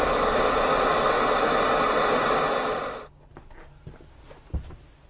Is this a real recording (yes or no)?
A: yes